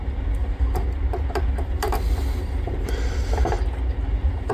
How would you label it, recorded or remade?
recorded